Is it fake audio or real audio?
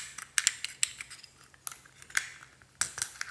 real